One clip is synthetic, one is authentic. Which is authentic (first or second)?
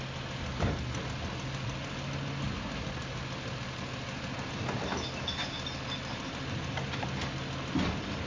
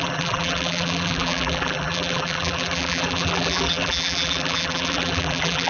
first